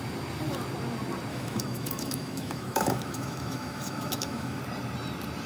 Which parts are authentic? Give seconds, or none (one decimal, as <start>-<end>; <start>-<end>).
0.0-1.3; 4.6-5.5

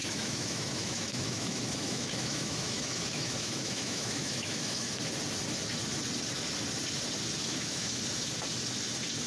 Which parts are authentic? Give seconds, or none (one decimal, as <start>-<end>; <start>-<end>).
4.9-7.4; 8.0-9.3

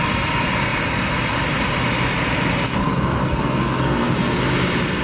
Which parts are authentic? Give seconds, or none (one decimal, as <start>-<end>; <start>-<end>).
0.0-2.8; 4.3-5.0

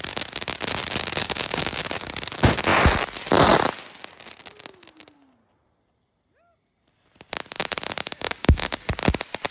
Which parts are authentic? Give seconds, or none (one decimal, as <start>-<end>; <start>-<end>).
0.0-1.2; 1.8-8.0; 8.9-9.5

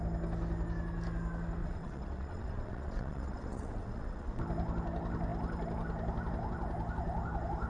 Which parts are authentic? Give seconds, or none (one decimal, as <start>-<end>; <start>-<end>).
0.0-1.6; 4.4-7.7

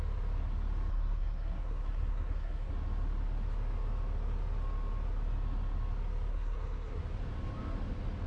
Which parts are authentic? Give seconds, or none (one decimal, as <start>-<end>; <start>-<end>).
0.0-0.9; 2.7-6.3; 7.0-8.3

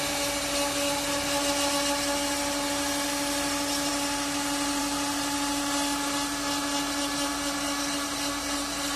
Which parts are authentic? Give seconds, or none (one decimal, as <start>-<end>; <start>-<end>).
0.0-9.0